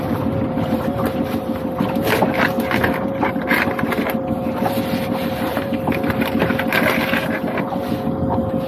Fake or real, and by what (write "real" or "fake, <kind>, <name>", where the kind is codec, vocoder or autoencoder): real